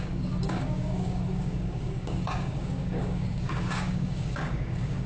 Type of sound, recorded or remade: remade